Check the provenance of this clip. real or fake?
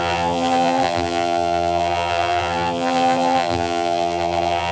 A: fake